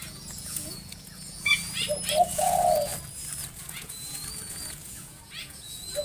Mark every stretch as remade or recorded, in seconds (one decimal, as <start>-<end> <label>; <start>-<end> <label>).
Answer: 0.0-1.5 remade; 1.5-2.2 recorded; 2.2-2.9 remade; 2.9-3.5 recorded; 3.5-6.0 remade